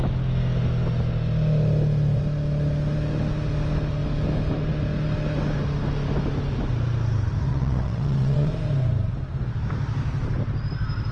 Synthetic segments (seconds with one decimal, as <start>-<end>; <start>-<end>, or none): 7.5-8.5